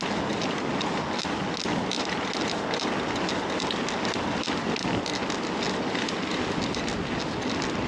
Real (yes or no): yes